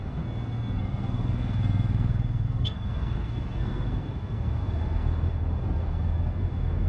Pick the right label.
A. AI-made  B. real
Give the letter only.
A